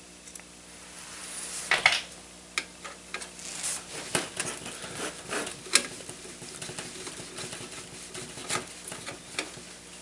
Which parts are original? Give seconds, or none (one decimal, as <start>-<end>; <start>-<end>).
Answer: 0.0-10.0